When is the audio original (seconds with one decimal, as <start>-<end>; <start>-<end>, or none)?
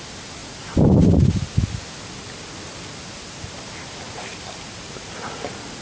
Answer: 0.0-5.8